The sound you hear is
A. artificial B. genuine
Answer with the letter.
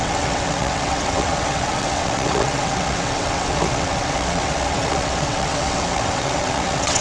A